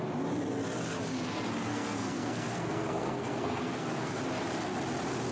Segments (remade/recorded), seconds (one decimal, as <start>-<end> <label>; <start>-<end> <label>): 0.0-1.7 recorded; 1.7-4.2 remade; 4.2-5.3 recorded